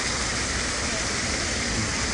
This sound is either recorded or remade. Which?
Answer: recorded